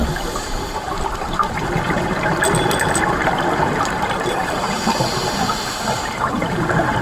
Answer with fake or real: fake